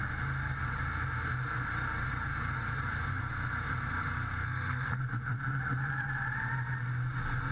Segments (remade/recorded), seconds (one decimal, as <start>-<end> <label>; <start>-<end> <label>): 0.0-4.4 recorded; 4.4-5.0 remade; 5.0-7.5 recorded